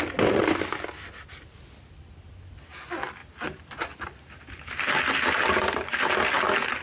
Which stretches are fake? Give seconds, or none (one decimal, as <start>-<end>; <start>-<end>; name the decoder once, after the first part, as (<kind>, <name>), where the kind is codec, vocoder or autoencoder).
none